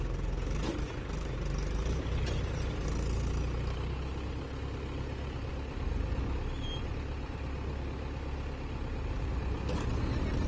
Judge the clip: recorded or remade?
recorded